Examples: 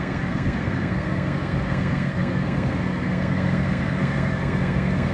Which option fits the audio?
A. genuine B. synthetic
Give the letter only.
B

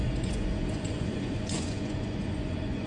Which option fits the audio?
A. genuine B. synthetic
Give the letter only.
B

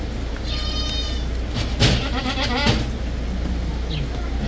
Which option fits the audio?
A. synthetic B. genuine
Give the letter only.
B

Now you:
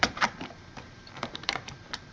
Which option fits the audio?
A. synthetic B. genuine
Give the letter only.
A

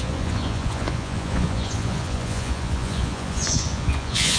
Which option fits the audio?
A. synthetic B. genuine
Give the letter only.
A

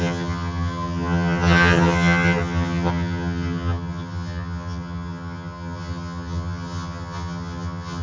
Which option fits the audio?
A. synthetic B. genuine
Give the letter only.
A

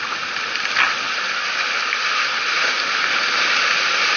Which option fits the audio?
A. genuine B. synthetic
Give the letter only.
A